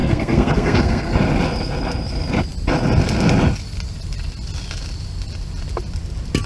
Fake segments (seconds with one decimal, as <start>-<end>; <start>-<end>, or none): 0.0-1.1